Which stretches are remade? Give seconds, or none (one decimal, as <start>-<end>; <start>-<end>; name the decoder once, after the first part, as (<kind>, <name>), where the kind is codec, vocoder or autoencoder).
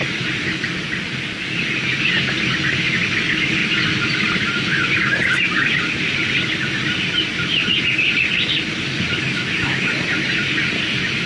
none